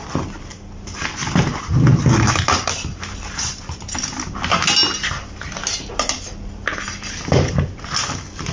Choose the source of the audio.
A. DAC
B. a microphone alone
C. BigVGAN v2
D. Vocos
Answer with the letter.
B